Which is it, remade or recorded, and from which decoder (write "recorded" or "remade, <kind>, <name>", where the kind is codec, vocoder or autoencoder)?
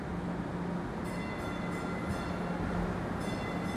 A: recorded